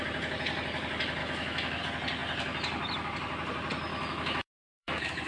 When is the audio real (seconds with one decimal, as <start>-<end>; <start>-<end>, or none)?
0.0-1.2; 1.8-3.9